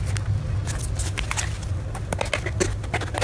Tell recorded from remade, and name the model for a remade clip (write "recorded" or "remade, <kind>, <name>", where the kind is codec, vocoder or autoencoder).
recorded